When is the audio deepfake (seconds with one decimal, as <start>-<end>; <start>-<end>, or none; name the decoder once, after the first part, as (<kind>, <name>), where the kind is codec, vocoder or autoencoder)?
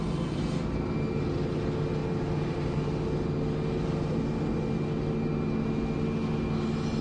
none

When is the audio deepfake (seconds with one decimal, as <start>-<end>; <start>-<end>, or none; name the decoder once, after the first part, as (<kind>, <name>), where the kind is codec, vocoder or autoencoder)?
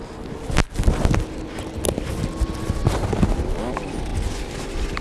none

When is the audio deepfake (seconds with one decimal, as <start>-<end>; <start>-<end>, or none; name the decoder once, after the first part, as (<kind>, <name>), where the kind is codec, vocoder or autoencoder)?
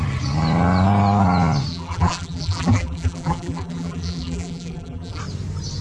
1.7-5.2 (vocoder, BigVGAN v2)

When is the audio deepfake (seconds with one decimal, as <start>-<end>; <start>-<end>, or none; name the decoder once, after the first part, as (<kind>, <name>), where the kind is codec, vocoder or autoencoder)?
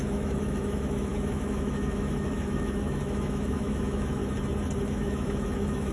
0.0-4.2 (autoencoder, DAC-VAE); 4.9-5.9